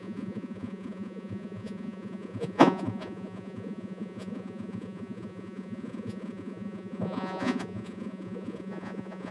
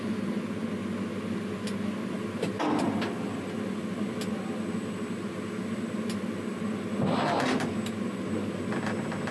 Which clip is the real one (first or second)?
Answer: second